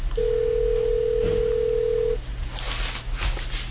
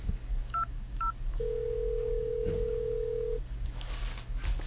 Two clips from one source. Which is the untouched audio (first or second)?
first